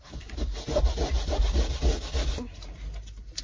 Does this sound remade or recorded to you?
recorded